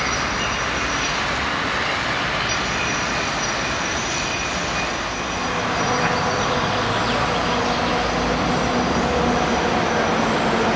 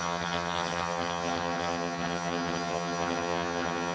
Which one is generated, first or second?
second